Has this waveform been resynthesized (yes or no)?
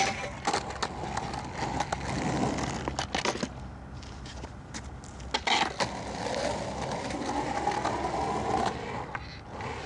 no